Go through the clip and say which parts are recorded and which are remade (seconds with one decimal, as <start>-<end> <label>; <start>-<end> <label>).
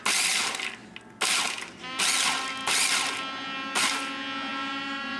0.0-5.2 recorded